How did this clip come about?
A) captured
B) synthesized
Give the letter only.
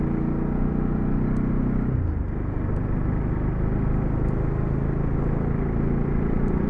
A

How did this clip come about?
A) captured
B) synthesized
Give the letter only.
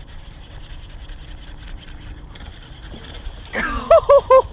A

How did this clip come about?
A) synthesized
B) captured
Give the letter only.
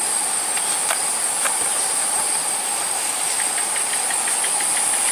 B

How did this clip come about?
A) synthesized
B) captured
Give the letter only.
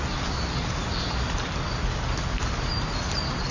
A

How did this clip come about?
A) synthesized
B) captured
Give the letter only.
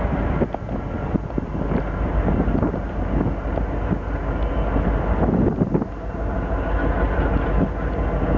B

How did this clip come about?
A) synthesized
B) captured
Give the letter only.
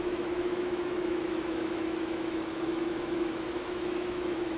A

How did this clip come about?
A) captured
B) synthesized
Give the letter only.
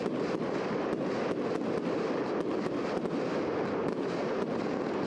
A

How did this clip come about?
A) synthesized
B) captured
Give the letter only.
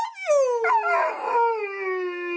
B